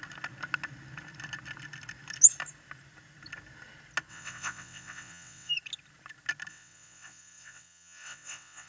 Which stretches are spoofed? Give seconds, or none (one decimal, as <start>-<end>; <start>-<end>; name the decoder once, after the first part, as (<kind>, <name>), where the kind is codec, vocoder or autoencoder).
4.1-5.5 (vocoder, WaveNeXt); 6.5-8.7